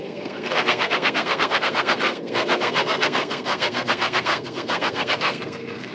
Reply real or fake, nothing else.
fake